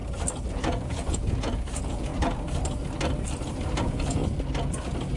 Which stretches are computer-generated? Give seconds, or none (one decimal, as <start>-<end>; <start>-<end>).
0.5-2.1; 3.8-4.2